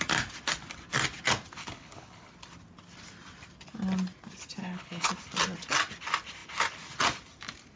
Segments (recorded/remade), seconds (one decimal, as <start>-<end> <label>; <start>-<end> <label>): 0.0-1.6 recorded; 1.6-2.3 remade; 2.3-4.6 recorded; 4.6-5.1 remade; 5.1-7.8 recorded